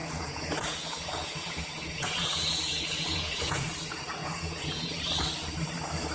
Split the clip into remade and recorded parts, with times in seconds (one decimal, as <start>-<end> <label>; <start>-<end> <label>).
0.0-3.7 remade; 3.7-4.2 recorded; 4.2-5.0 remade; 5.0-6.1 recorded